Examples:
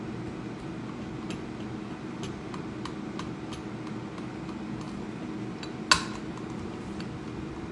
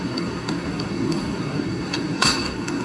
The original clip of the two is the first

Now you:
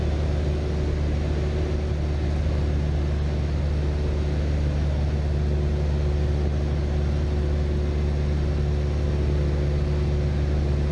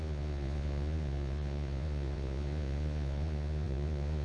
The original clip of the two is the first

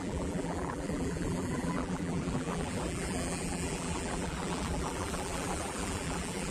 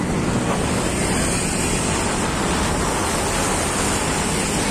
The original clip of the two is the second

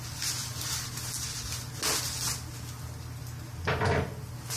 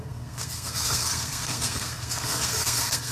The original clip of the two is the first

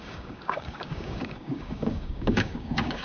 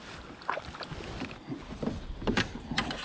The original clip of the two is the second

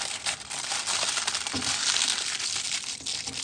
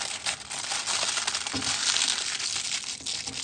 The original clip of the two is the second